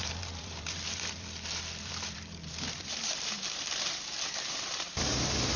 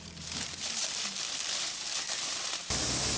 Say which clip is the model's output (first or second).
first